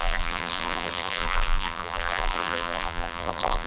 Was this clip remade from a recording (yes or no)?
yes